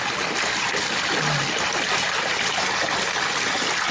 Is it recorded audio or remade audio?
recorded